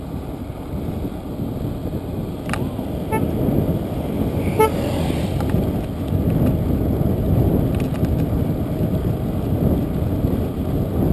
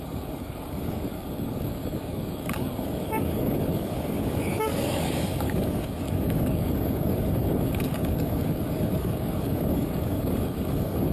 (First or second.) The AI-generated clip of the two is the second